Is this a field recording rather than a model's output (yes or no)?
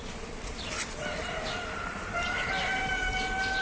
yes